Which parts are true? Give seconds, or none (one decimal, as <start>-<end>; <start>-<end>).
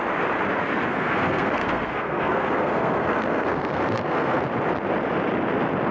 0.0-0.9; 4.4-5.9